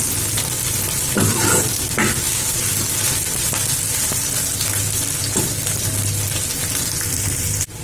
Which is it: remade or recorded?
recorded